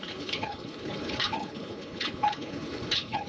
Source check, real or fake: fake